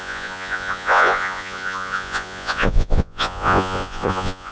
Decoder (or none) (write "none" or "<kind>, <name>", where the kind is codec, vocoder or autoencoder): vocoder, Vocos